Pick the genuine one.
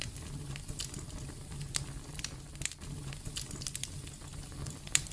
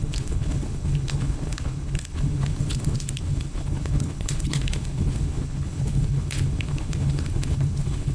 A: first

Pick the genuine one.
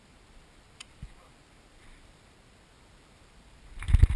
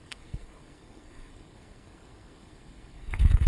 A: first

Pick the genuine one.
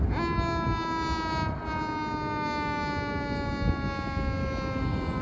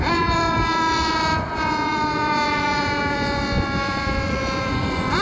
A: first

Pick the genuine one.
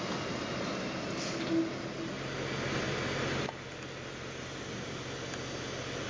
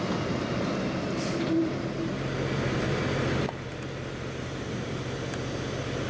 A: first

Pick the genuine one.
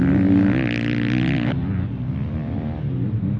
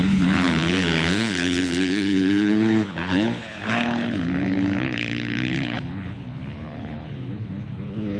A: first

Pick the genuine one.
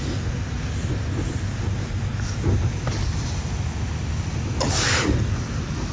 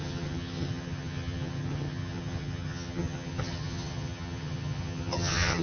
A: first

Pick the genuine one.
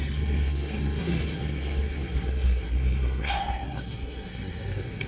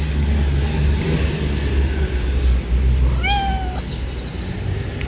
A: second